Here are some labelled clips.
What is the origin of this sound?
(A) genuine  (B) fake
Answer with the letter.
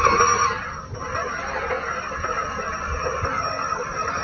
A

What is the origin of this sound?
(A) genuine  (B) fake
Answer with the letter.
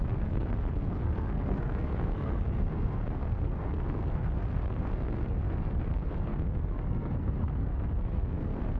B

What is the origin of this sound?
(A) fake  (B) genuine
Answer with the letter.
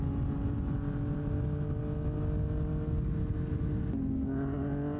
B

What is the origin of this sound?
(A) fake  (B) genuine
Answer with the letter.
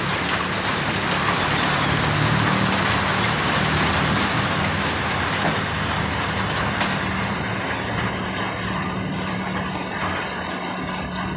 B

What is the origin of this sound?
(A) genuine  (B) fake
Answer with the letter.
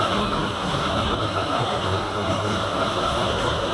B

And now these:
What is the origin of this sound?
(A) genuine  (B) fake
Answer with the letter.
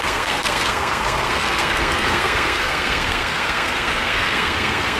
B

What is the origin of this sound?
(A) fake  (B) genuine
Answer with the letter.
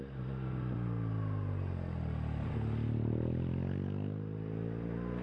B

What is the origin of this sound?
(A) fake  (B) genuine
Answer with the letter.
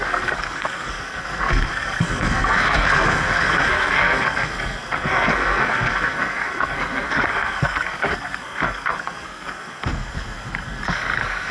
A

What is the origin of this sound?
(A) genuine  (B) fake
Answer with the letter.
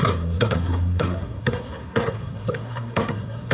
B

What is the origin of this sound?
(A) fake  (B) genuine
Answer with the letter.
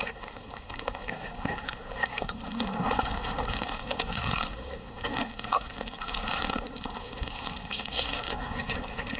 A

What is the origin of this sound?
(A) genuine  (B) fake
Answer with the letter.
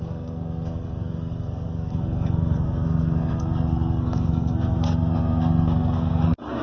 B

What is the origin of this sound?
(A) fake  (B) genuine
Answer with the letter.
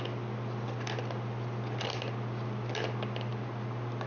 B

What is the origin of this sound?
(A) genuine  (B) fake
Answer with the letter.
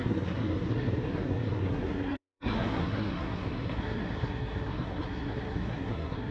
B